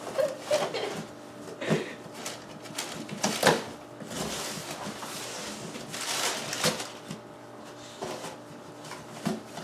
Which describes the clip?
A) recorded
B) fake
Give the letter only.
A